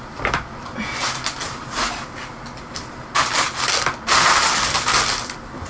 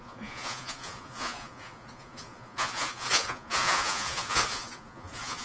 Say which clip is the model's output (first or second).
second